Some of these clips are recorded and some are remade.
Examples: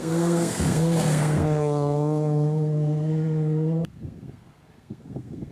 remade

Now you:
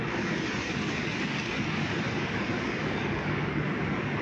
remade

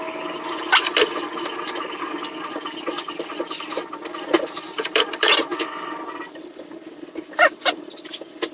remade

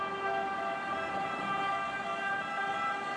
recorded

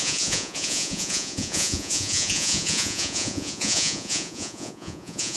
remade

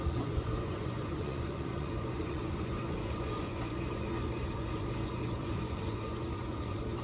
remade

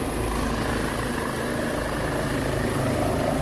recorded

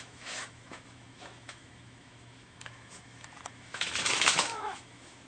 remade